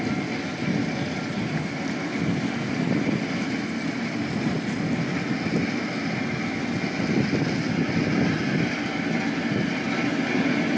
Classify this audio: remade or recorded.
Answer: recorded